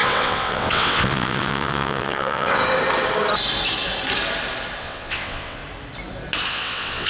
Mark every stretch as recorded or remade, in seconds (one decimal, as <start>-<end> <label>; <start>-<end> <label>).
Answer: 0.0-2.6 remade; 2.6-4.8 recorded; 4.8-5.6 remade; 5.6-6.5 recorded; 6.5-7.1 remade

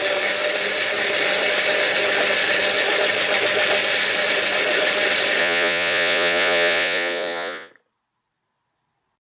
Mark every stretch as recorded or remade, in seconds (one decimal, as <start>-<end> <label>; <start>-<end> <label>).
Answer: 0.0-5.4 recorded; 5.4-7.7 remade; 7.7-9.2 recorded

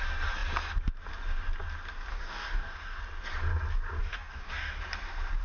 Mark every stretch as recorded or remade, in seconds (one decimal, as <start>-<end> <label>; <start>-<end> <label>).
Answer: 0.0-2.1 recorded; 2.1-3.0 remade; 3.0-4.0 recorded; 4.0-4.8 remade; 4.8-5.4 recorded

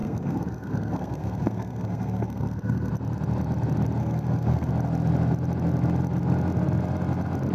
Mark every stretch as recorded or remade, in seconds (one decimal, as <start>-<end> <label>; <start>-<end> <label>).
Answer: 0.0-2.9 remade; 2.9-4.0 recorded; 4.0-4.7 remade; 4.7-7.5 recorded